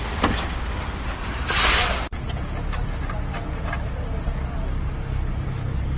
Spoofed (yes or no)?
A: no